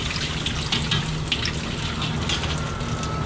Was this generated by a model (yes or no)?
no